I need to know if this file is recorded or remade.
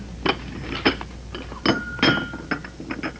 recorded